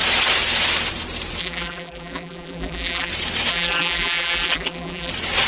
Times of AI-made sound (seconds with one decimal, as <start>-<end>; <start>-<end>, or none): 1.4-3.1; 3.5-5.1